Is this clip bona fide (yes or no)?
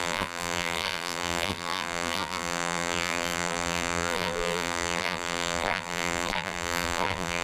no